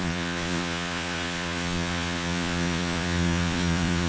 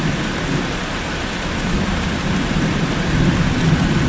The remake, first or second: first